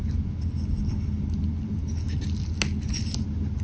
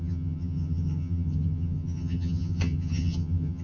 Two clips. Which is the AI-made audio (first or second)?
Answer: second